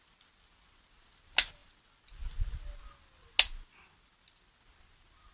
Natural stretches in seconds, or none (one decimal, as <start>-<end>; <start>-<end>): 0.0-5.3